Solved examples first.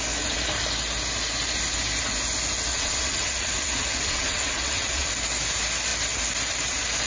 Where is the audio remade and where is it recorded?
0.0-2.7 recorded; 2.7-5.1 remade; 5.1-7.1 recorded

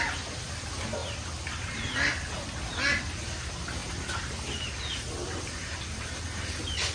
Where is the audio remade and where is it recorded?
0.0-6.9 recorded

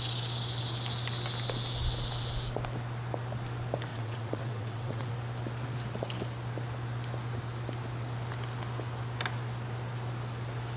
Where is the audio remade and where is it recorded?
0.0-3.9 recorded; 3.9-5.1 remade; 5.1-10.8 recorded

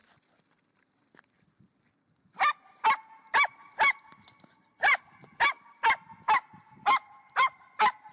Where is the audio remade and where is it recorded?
0.0-8.1 recorded

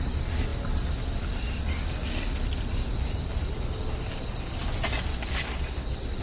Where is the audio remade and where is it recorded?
0.0-6.2 recorded

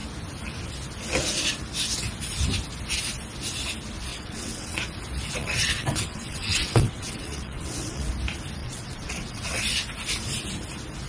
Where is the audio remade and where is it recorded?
0.0-4.1 recorded; 4.1-4.8 remade; 4.8-5.4 recorded; 5.4-8.1 remade; 8.1-8.6 recorded; 8.6-9.6 remade; 9.6-11.1 recorded

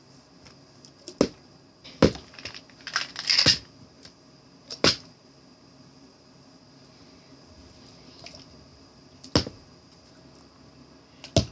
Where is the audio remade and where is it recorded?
0.0-11.5 recorded